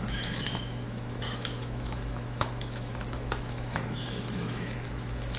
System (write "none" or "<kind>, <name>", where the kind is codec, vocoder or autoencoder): autoencoder, DAC-VAE